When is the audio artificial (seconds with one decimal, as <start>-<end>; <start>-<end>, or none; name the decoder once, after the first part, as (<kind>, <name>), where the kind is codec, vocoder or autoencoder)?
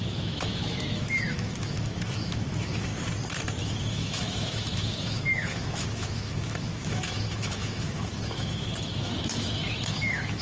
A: 0.0-2.9 (autoencoder, DAC-VAE); 3.6-10.4